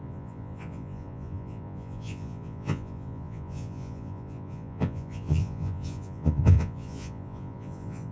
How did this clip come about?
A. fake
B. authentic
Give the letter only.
A